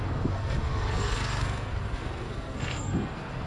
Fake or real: fake